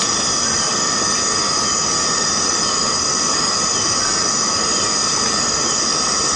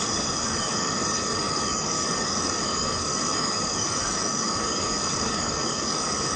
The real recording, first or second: first